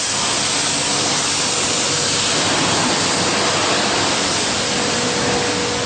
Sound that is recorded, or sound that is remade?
recorded